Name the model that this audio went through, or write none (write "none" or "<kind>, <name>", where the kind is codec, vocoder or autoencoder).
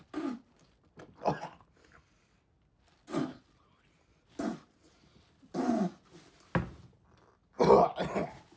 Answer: none